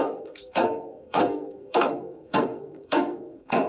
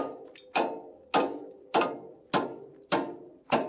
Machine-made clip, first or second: first